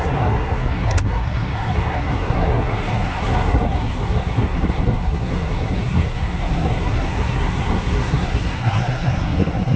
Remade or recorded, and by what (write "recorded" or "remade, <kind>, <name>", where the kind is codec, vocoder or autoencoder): remade, codec, SNAC